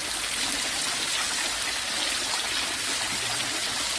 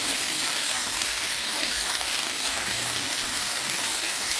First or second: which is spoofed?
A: second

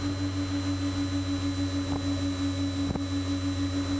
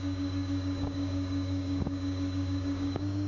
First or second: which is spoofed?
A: second